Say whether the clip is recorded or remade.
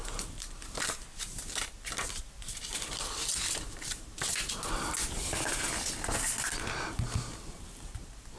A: recorded